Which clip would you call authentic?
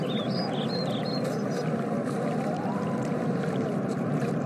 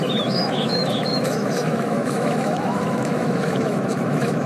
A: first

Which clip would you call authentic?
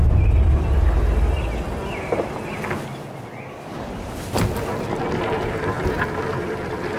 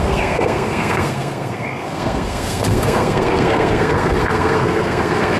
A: first